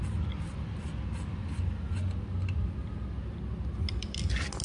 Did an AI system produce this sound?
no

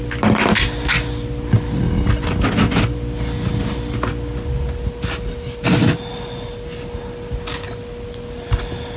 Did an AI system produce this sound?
no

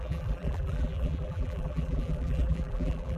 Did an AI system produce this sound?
yes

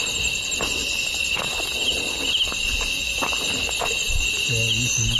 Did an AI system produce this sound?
no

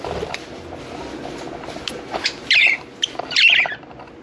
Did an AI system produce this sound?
no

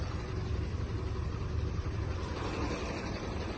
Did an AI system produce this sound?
yes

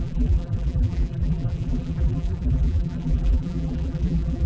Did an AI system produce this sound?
yes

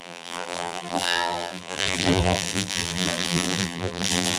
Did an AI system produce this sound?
yes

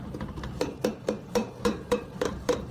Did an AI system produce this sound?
yes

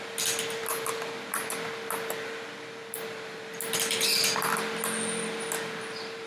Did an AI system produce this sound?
yes